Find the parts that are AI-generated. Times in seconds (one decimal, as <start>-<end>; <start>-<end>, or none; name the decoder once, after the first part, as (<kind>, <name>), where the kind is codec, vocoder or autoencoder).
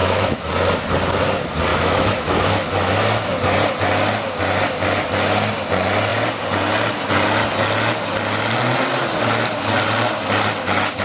0.0-0.5 (autoencoder, DAC-VAE); 1.7-2.9